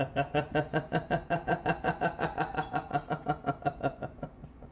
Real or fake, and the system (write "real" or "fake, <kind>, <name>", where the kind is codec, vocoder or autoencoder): fake, vocoder, Vocos